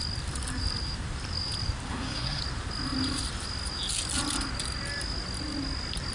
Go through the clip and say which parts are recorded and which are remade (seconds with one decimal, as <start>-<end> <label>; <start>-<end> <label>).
0.0-1.9 recorded; 1.9-2.4 remade; 2.4-6.1 recorded